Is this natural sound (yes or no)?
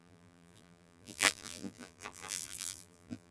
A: no